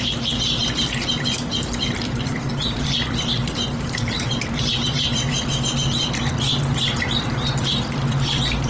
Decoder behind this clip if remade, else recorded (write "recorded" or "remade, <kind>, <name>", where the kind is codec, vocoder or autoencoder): remade, vocoder, BigVGAN v2